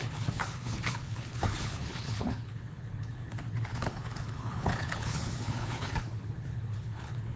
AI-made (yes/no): yes